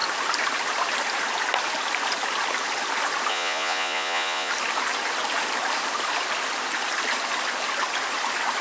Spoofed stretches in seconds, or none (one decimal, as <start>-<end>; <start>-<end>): 3.3-4.5